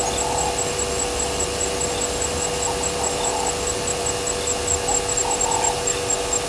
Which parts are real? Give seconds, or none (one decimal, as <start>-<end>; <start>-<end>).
0.0-6.5